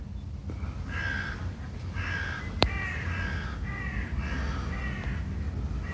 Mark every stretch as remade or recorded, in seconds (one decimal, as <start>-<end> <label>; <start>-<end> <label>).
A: 0.0-5.9 recorded

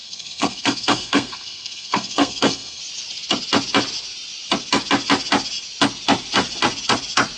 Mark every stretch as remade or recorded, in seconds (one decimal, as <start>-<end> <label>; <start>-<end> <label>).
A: 0.0-2.8 remade; 2.8-7.4 recorded

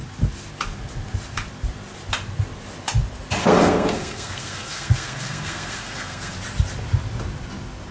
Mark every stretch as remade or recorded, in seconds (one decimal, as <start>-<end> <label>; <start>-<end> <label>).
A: 0.0-3.4 recorded; 3.4-6.3 remade; 6.3-7.9 recorded

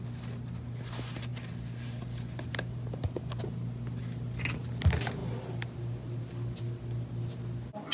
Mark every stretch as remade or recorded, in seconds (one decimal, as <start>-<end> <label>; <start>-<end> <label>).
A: 0.0-7.9 recorded

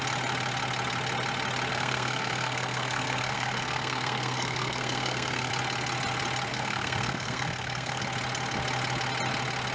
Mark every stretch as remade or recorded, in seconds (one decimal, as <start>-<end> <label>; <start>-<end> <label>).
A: 0.0-1.7 recorded; 1.7-5.5 remade; 5.5-6.5 recorded; 6.5-8.0 remade; 8.0-9.7 recorded

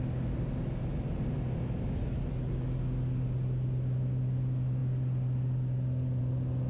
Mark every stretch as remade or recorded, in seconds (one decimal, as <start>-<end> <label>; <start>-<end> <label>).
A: 0.0-6.7 recorded

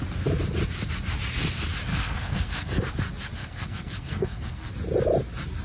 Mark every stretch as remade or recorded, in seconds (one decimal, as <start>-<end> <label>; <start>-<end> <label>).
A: 0.0-1.9 recorded; 1.9-2.8 remade; 2.8-3.4 recorded; 3.4-4.7 remade; 4.7-5.6 recorded